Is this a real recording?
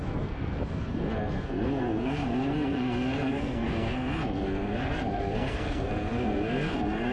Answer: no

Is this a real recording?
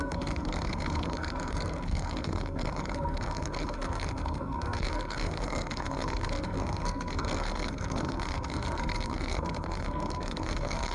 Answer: no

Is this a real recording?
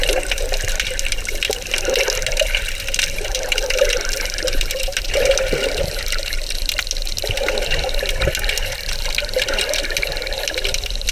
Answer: yes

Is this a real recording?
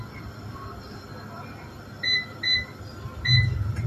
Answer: yes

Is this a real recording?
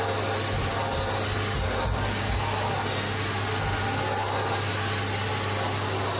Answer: yes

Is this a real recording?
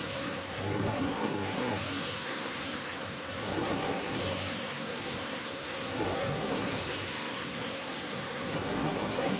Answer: no